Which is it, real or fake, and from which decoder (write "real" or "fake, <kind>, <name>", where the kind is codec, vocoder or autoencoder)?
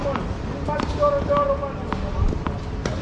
real